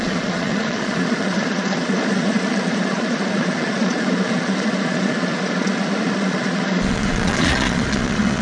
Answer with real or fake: fake